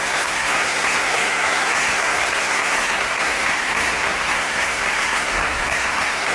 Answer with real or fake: fake